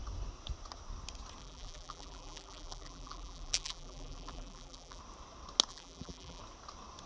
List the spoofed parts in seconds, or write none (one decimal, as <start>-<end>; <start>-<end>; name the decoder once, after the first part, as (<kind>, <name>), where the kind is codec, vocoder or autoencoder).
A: 1.4-5.0 (vocoder, BigVGAN v2); 5.7-6.4